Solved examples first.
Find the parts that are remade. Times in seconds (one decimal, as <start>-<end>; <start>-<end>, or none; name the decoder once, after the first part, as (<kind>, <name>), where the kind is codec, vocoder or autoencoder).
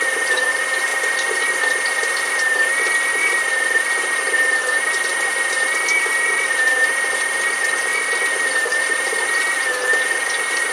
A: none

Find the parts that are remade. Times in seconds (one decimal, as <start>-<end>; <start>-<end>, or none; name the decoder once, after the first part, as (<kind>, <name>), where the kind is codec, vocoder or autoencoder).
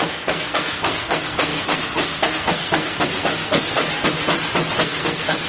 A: 0.0-3.8 (codec, SNAC); 4.8-5.5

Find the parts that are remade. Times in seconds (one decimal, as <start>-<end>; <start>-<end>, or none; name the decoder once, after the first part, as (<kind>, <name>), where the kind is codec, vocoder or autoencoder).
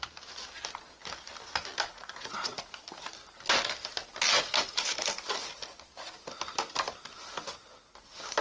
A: 1.9-2.7 (vocoder, Vocos)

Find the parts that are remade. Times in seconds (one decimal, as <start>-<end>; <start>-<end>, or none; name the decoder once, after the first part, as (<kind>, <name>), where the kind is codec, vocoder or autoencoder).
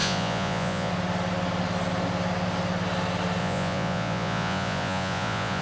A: 0.0-0.9 (vocoder, Vocos); 3.4-5.6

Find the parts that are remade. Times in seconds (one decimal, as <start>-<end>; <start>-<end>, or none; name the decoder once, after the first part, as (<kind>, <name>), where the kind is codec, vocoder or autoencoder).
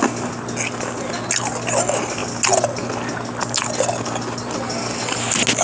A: none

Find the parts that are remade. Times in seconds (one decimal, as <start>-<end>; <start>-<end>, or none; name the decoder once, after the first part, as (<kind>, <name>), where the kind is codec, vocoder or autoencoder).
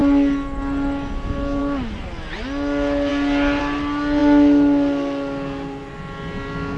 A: none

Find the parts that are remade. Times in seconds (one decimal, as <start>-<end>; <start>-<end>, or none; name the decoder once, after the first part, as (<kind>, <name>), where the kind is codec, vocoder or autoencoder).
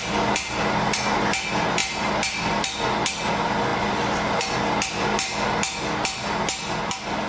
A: none